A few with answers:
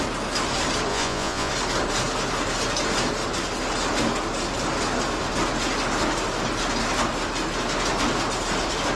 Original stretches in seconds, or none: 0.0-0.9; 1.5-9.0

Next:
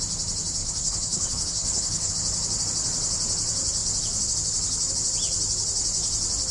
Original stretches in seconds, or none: 0.0-0.6; 2.1-6.5

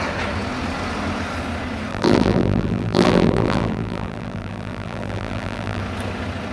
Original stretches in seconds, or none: 0.0-1.9; 5.8-6.5

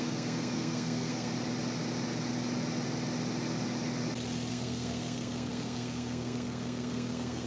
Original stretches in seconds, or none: 1.3-4.5

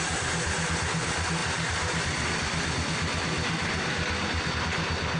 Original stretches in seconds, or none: 0.0-5.2

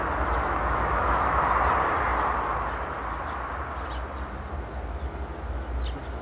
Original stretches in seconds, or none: 0.0-0.4; 1.5-6.2

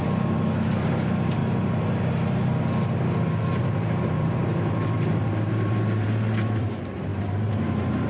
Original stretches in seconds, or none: 1.4-3.6

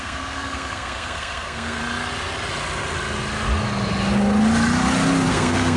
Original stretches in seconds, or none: 1.8-5.3